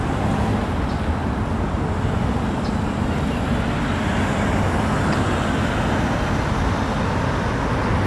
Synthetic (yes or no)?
no